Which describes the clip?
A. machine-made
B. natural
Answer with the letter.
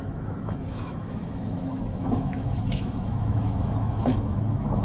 A